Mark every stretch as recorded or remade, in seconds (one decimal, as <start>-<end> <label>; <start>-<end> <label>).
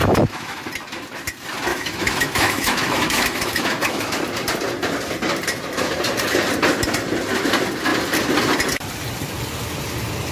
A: 0.0-0.7 remade; 0.7-1.7 recorded; 1.7-4.2 remade; 4.2-10.3 recorded